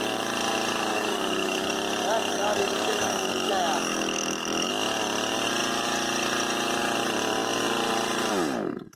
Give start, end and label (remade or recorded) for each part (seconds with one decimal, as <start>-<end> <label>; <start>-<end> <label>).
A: 0.0-0.9 recorded; 0.9-1.7 remade; 1.7-2.3 recorded; 2.3-4.7 remade; 4.7-9.0 recorded